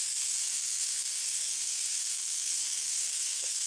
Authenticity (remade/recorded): remade